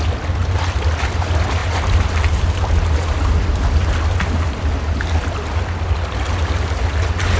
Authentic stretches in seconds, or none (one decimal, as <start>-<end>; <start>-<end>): 0.0-7.4